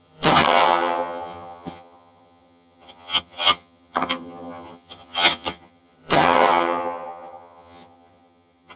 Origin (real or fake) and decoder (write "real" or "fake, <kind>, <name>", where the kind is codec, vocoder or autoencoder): fake, vocoder, HiFi-GAN